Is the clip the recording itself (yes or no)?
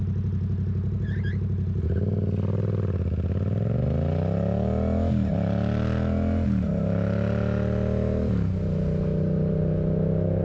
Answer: yes